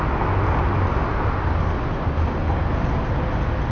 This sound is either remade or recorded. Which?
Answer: recorded